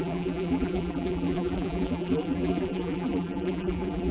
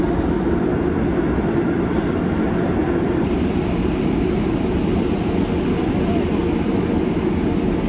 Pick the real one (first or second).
second